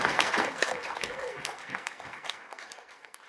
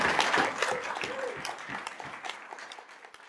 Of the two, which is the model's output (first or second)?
first